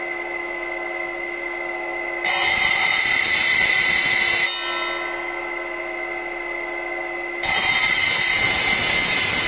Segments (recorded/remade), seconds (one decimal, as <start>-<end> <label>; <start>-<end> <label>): 0.0-9.5 recorded